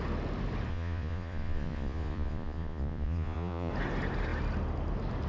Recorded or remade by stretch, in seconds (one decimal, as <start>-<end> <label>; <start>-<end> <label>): 0.0-0.7 recorded; 0.7-3.7 remade; 3.7-5.3 recorded